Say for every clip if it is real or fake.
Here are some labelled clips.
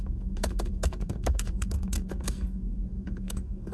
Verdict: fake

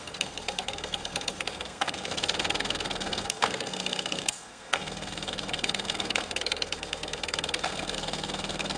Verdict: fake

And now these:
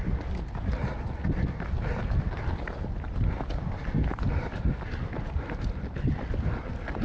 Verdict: real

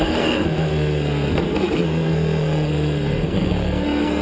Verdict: fake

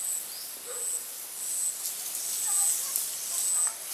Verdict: real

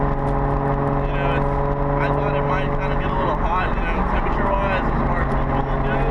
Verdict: real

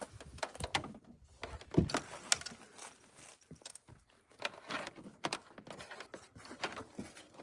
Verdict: real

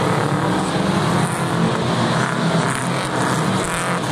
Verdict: real